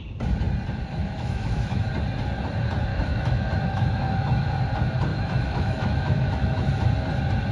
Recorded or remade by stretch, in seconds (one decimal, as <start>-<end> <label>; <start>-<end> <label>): 0.0-1.0 recorded; 1.0-1.9 remade; 1.9-2.9 recorded; 2.9-4.5 remade; 4.5-5.1 recorded; 5.1-6.7 remade; 6.7-7.5 recorded